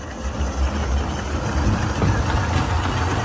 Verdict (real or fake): real